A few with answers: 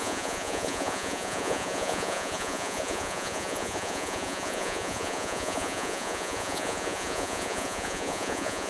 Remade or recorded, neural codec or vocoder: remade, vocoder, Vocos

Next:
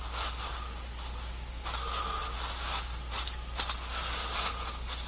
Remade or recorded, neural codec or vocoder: recorded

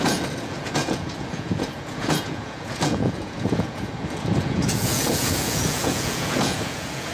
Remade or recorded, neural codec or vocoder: remade, vocoder, Vocos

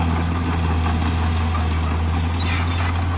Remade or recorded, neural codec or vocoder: recorded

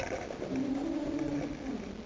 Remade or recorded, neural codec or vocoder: recorded